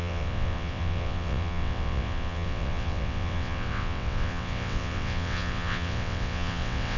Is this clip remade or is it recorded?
remade